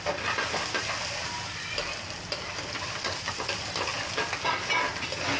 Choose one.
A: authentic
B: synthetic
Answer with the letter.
A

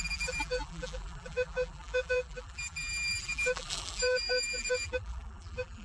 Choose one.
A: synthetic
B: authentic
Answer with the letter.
A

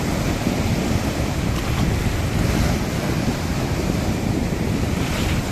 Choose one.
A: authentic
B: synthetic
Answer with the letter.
A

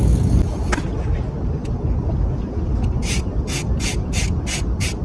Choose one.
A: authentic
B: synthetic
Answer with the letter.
A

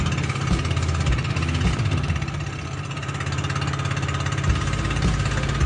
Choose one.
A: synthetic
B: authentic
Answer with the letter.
B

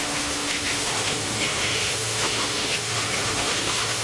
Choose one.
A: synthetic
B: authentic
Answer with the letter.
A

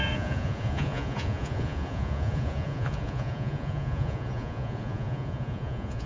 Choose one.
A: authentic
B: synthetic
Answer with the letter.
B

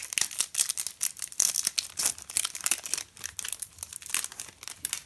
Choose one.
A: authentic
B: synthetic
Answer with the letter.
A